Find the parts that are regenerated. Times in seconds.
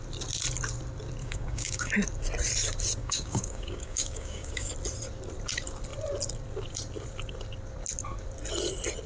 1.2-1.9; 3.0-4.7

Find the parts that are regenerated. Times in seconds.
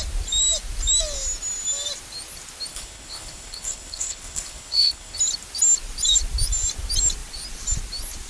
2.7-5.2